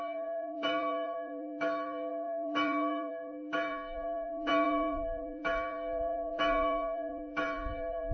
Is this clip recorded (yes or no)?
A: no